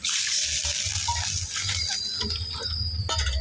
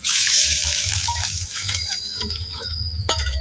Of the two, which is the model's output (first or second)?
second